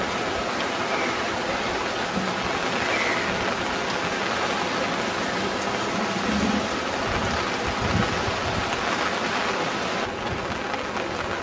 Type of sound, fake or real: real